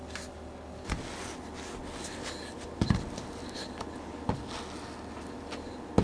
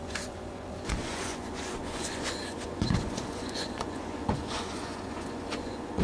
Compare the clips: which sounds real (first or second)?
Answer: first